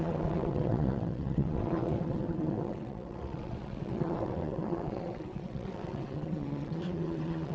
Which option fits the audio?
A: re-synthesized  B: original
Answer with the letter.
A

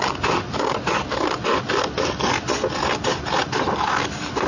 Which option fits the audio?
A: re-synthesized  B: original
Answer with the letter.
B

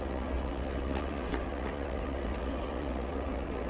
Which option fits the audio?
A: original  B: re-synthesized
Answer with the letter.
B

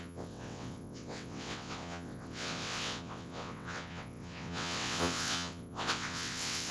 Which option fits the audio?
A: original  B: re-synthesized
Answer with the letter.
B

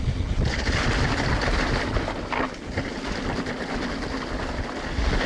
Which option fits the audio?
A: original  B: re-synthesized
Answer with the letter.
A